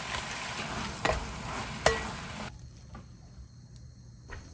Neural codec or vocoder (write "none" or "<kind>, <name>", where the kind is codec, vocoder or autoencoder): none